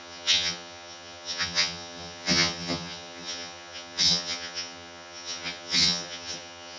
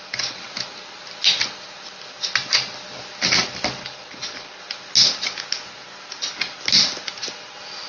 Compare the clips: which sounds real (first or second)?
second